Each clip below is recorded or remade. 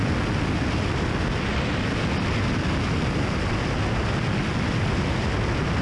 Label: recorded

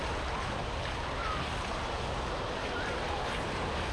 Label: recorded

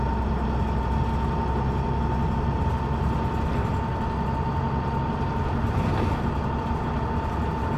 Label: recorded